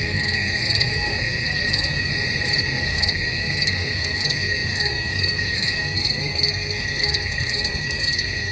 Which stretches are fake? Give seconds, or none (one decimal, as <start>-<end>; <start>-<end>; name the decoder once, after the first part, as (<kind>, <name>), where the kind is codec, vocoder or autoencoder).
0.0-2.1 (codec, SNAC); 2.6-8.5